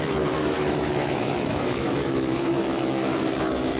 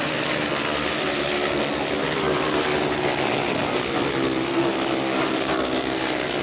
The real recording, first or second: second